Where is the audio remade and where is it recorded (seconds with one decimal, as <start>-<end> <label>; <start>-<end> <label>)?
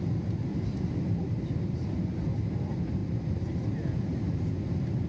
0.0-5.1 recorded